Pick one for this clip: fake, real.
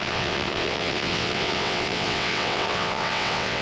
fake